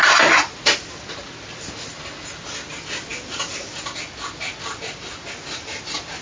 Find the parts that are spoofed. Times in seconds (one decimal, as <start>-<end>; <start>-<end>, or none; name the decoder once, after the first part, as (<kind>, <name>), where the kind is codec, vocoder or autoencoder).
none